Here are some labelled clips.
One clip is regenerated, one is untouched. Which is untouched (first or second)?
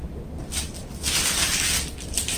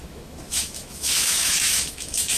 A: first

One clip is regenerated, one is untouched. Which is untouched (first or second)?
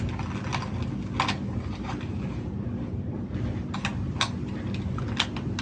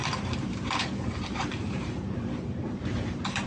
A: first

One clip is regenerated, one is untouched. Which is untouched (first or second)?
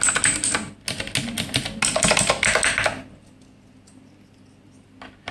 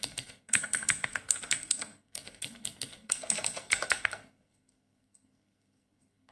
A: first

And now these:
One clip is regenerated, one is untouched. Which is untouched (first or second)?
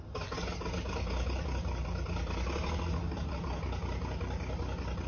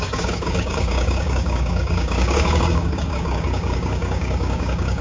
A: first